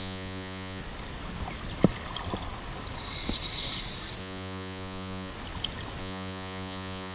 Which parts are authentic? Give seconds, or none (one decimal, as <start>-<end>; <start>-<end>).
0.8-4.2; 5.3-6.0